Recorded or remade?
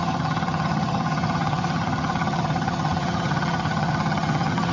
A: remade